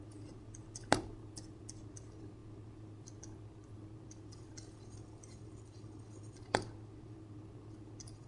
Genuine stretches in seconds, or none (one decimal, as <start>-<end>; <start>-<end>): 0.0-8.3